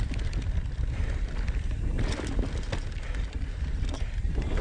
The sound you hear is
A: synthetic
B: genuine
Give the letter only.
A